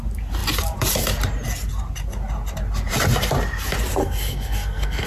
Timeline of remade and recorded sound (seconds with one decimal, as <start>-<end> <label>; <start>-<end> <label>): 0.0-4.0 recorded; 4.0-5.1 remade